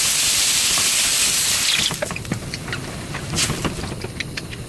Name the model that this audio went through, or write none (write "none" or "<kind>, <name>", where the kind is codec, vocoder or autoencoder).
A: none